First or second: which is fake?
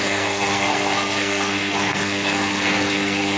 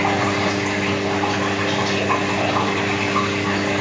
first